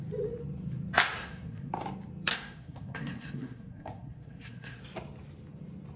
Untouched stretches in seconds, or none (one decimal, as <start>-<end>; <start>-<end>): 0.0-1.2; 1.7-2.3; 4.8-6.0